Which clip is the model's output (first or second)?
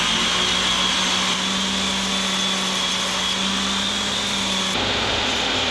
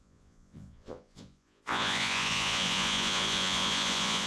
second